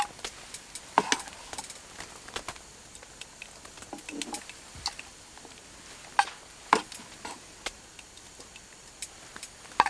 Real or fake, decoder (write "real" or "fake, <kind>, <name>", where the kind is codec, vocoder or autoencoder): real